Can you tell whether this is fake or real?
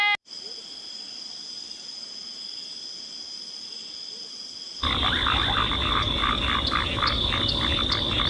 real